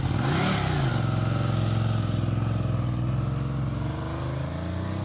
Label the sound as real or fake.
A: real